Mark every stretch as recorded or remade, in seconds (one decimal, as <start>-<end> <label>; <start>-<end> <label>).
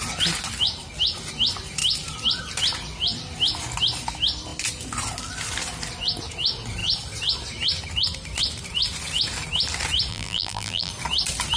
0.0-10.1 recorded; 10.1-10.9 remade; 10.9-11.6 recorded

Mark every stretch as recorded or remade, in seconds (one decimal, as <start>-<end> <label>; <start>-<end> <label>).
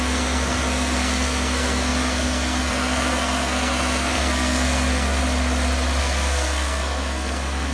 0.0-5.2 remade; 5.2-6.0 recorded; 6.0-7.7 remade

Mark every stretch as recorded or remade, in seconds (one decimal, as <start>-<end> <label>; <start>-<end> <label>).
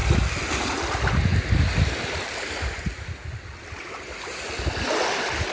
0.0-5.5 recorded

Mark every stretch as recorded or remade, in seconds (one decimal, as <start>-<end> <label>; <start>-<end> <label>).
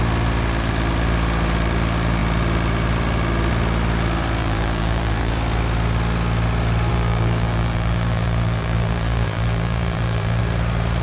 0.0-4.4 recorded; 4.4-5.3 remade; 5.3-6.9 recorded; 6.9-10.4 remade; 10.4-11.0 recorded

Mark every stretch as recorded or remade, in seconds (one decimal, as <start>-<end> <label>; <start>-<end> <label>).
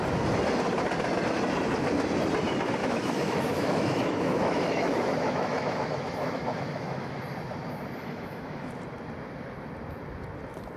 0.0-2.8 recorded; 2.8-7.2 remade; 7.2-8.0 recorded; 8.0-8.7 remade; 8.7-10.8 recorded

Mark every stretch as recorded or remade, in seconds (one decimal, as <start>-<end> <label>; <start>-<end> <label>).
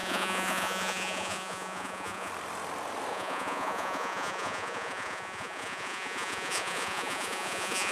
0.0-2.3 remade; 2.3-3.1 recorded; 3.1-7.9 remade